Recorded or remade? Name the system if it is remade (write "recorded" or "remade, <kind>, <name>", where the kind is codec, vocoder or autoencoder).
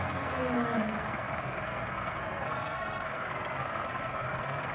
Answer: remade, codec, SNAC